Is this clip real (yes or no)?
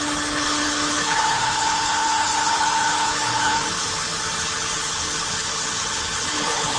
no